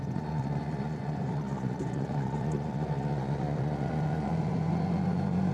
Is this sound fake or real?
fake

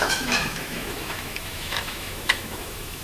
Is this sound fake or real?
fake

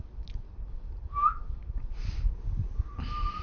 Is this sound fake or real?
real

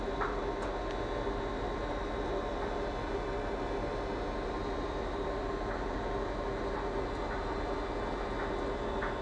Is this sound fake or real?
real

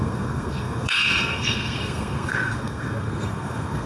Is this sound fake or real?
fake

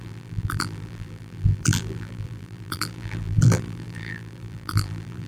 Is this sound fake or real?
fake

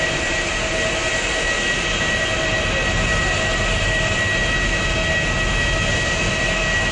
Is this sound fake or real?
real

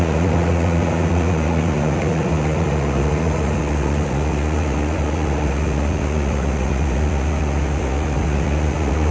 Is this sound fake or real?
fake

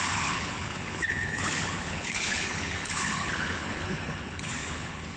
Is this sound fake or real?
fake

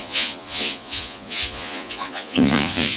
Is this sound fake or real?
fake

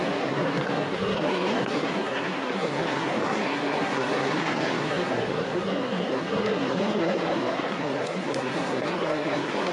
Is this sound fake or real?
fake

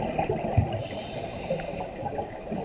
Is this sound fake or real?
real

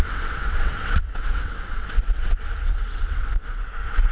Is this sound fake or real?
fake